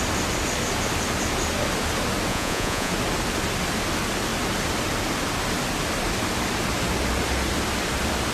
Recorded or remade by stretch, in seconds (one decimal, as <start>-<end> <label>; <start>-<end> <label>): 0.0-2.3 recorded; 2.3-2.9 remade; 2.9-8.3 recorded

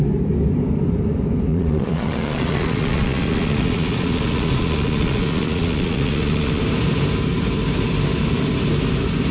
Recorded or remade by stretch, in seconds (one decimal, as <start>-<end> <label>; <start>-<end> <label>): 0.0-1.5 recorded; 1.5-6.6 remade; 6.6-9.3 recorded

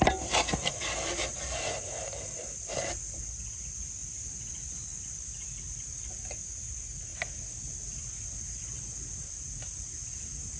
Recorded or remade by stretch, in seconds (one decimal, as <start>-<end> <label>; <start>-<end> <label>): 0.0-10.6 recorded

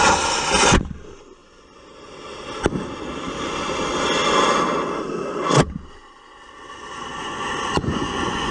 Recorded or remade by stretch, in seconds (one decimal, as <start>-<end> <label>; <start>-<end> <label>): 0.0-7.1 recorded; 7.1-8.5 remade

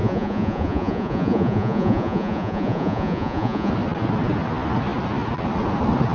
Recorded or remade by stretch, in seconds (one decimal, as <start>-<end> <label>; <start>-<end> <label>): 0.0-3.7 remade; 3.7-6.1 recorded

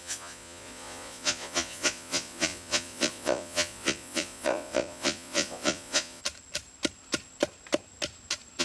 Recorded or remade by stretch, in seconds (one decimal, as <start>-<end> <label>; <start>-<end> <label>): 0.0-6.2 remade; 6.2-8.6 recorded